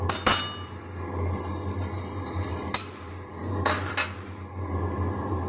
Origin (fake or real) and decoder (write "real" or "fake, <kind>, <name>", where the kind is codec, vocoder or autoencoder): real